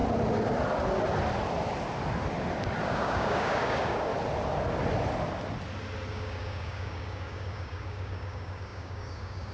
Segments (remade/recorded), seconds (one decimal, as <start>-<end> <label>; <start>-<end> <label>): 0.0-2.8 recorded; 2.8-4.1 remade; 4.1-6.1 recorded; 6.1-9.5 remade